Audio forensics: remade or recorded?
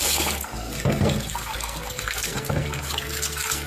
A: remade